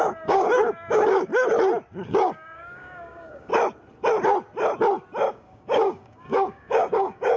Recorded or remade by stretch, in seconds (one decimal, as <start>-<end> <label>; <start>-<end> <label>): 0.0-1.3 remade; 1.3-2.1 recorded; 2.1-3.5 remade; 3.5-5.3 recorded; 5.3-7.4 remade